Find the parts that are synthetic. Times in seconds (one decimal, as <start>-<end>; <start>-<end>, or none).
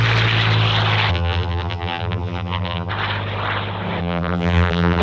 1.1-2.9; 4.0-5.0